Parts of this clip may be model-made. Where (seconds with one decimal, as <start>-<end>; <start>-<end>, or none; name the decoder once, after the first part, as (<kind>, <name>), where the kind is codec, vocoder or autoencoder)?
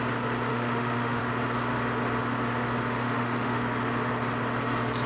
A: 0.5-1.2 (autoencoder, DAC-VAE); 3.0-3.6